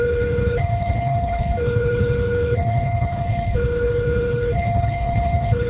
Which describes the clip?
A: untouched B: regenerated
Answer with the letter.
B